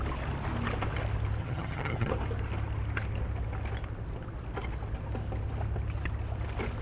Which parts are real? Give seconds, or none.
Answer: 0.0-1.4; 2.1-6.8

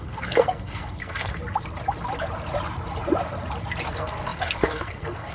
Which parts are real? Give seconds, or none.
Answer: 1.4-3.9

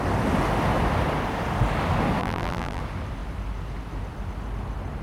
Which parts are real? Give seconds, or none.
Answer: 0.0-2.2; 2.8-5.0

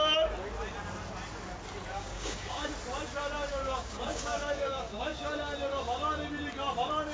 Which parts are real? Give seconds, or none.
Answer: 0.0-1.9; 2.7-3.5; 5.3-7.1

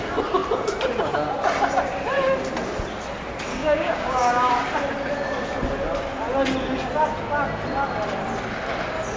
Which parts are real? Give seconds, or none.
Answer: 0.0-3.5; 4.5-9.2